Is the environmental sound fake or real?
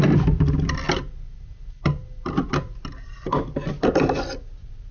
real